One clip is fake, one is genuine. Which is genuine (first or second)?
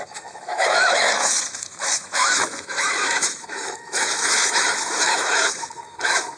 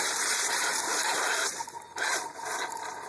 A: second